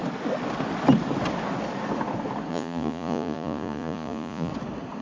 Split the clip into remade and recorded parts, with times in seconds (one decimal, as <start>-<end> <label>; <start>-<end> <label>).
0.0-2.5 recorded; 2.5-4.5 remade; 4.5-5.0 recorded